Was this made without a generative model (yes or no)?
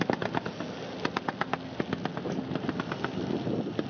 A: yes